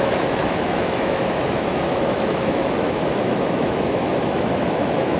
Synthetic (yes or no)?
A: yes